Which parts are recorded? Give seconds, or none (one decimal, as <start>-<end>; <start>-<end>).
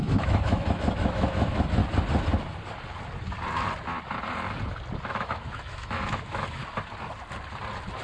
1.8-5.1; 6.6-8.0